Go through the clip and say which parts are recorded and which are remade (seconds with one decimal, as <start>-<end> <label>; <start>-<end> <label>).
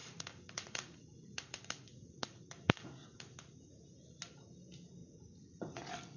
0.0-3.7 remade; 3.7-5.0 recorded; 5.0-5.8 remade; 5.8-6.2 recorded